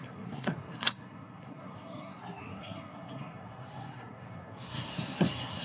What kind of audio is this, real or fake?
fake